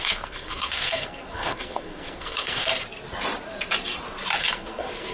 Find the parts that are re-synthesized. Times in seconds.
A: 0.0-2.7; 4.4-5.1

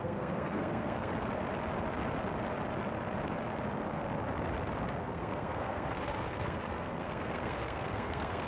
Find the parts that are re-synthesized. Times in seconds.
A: 0.0-1.1; 5.0-8.5

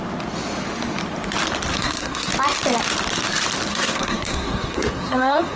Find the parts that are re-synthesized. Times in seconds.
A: 1.7-2.3; 3.7-5.6

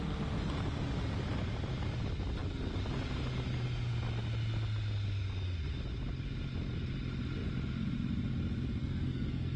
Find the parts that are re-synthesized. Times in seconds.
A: 8.8-9.6

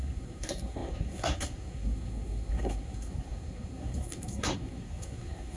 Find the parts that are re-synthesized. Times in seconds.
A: 0.0-5.6

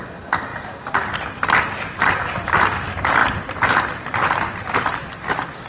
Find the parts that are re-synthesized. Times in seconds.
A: none